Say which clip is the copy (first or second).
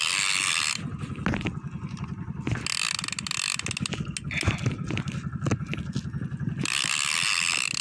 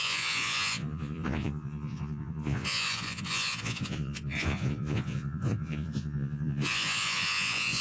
second